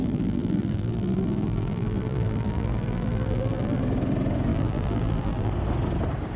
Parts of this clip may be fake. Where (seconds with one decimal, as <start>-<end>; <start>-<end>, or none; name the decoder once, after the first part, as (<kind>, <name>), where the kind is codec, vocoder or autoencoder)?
0.0-3.8 (vocoder, BigVGAN v2); 4.5-5.5